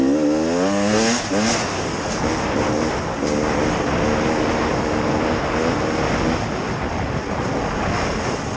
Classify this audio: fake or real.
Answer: real